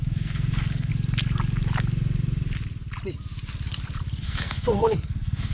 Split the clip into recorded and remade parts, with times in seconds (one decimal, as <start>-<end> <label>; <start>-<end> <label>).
0.0-0.9 remade; 0.9-4.2 recorded; 4.2-5.5 remade